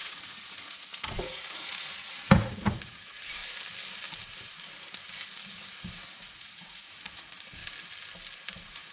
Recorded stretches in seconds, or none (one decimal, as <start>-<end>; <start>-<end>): 3.4-6.0; 7.6-8.5